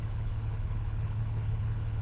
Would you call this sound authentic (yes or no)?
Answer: no